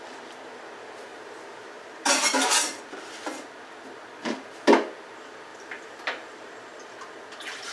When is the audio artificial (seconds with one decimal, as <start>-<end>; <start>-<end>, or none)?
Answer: 1.1-2.8; 5.5-6.5